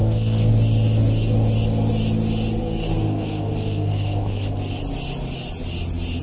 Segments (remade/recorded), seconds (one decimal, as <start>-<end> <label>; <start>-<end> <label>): 0.0-0.5 remade; 0.5-2.6 recorded; 2.6-4.5 remade; 4.5-6.2 recorded